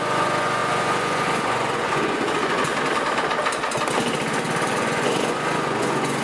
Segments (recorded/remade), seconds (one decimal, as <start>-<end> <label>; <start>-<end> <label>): 0.0-2.7 remade; 2.7-4.7 recorded; 4.7-6.2 remade